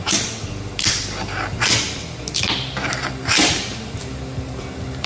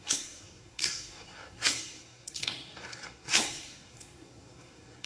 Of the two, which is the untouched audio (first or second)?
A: first